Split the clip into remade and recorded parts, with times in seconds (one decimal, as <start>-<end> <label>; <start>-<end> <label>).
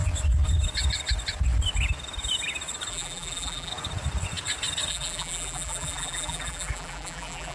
0.0-2.9 recorded; 2.9-3.7 remade; 3.7-4.9 recorded; 4.9-7.5 remade